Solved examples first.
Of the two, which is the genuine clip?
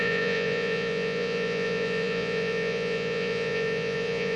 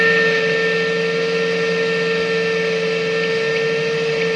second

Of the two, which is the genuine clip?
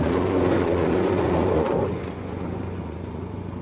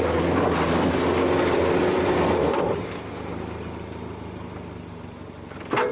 second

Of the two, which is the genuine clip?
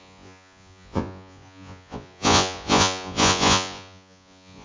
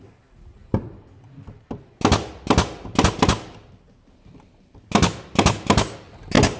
second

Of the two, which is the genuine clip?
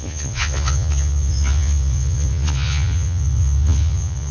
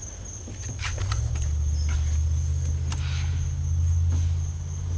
second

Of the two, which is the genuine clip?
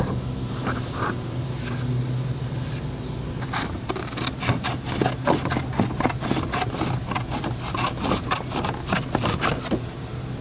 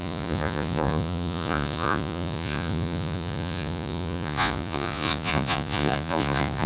first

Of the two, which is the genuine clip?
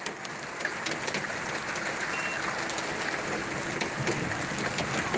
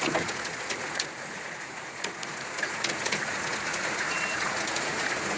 first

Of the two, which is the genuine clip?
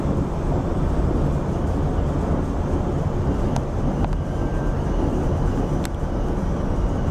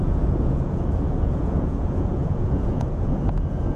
first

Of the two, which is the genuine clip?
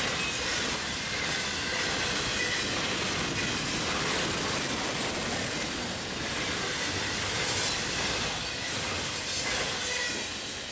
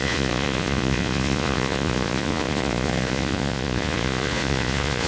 first